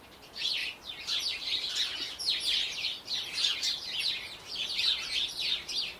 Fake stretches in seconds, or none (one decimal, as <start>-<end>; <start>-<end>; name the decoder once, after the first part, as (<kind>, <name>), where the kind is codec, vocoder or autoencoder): 0.6-1.7 (vocoder, BigVGAN v2)